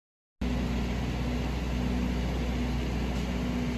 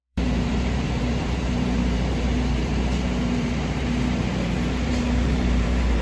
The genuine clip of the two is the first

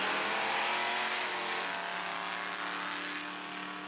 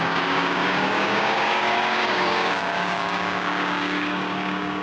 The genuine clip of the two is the first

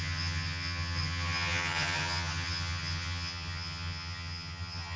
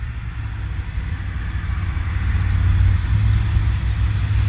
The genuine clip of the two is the second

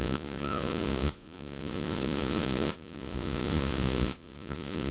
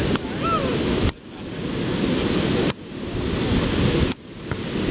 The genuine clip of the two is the second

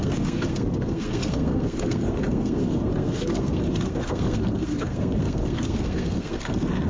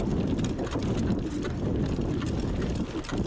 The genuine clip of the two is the second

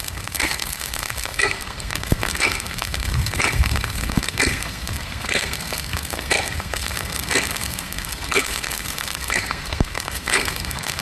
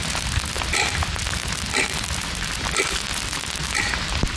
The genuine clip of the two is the second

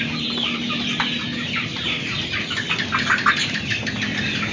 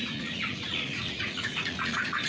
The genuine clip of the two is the first